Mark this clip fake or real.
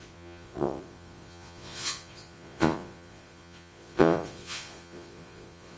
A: fake